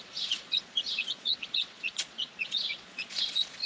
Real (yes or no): no